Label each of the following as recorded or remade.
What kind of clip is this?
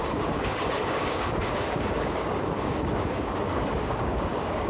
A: remade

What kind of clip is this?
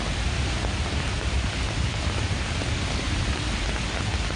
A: recorded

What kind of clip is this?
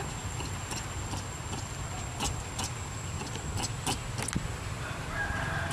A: recorded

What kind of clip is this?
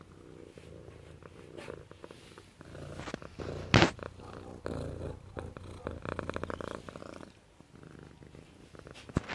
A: recorded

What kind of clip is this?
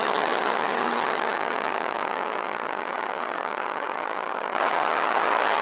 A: remade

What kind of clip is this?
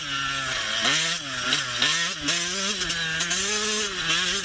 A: recorded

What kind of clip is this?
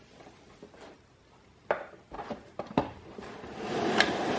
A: recorded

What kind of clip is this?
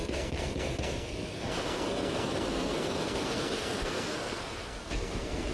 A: remade